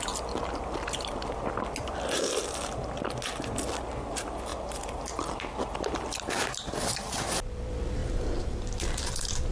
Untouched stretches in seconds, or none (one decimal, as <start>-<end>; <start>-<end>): 0.0-9.5